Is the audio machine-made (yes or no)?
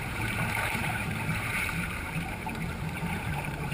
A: yes